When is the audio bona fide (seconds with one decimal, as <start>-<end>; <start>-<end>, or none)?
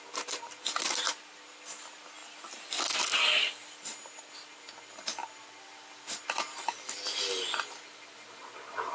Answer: 0.0-8.9